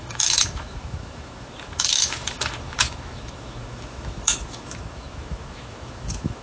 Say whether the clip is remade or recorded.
remade